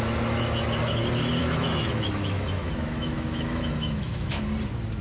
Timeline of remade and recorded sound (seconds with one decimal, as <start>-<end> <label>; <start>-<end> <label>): 0.0-1.4 recorded; 1.4-4.4 remade; 4.4-5.0 recorded